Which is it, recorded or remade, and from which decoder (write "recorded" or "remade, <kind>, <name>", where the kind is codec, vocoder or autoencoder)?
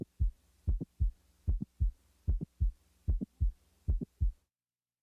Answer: recorded